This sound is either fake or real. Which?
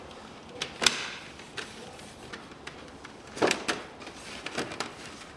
fake